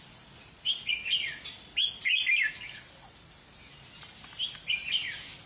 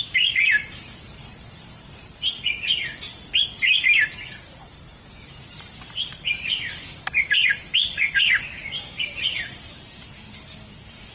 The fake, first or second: second